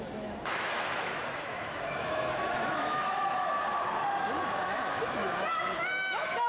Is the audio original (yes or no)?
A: no